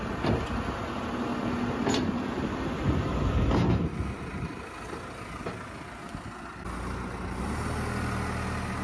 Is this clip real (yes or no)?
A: yes